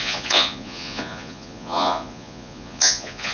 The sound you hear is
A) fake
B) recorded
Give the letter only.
A